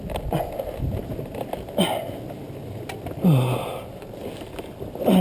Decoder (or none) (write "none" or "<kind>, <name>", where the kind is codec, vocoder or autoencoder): none